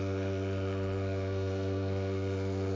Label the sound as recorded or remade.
remade